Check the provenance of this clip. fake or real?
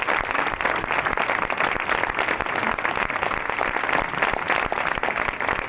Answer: real